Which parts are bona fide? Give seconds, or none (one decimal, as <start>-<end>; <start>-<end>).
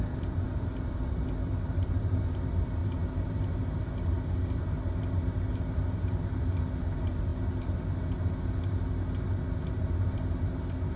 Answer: 2.8-6.2; 7.3-11.0